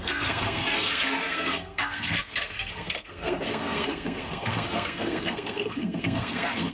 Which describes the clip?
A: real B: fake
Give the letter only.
B